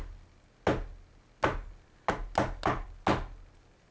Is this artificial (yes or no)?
no